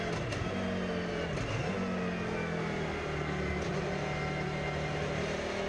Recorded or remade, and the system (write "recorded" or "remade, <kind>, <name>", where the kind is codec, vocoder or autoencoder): recorded